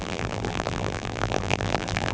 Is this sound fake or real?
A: fake